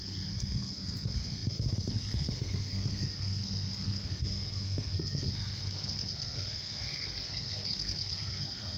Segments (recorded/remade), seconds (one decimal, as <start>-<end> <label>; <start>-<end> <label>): 0.0-8.8 remade